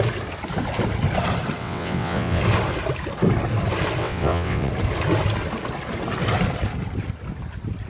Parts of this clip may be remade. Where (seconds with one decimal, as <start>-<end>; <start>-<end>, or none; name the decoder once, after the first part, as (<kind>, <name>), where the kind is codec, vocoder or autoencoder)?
1.6-2.4 (vocoder, WaveNeXt); 4.0-4.7